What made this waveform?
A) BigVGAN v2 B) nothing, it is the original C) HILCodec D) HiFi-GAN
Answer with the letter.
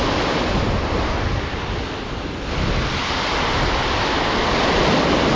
B